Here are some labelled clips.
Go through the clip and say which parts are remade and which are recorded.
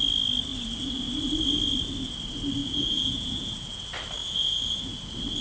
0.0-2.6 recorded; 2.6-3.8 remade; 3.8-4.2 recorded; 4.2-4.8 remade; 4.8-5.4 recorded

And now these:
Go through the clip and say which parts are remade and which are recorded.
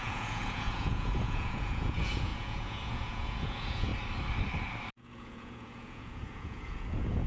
0.0-3.9 remade; 3.9-4.9 recorded; 4.9-7.3 remade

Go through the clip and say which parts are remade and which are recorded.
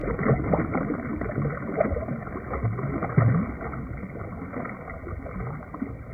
0.0-6.1 recorded